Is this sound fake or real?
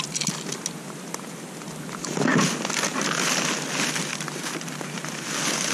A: real